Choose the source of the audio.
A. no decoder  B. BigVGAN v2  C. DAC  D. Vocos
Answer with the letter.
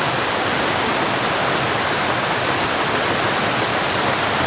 A